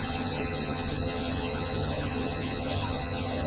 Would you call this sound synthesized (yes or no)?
yes